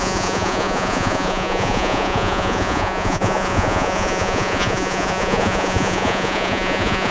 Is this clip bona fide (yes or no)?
no